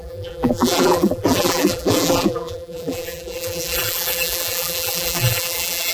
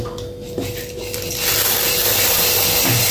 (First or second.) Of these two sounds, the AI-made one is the first